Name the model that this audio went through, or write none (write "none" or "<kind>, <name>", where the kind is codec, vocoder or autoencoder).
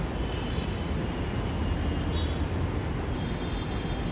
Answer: none